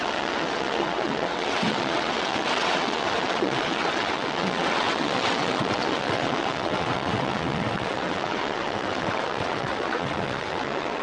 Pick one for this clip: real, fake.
fake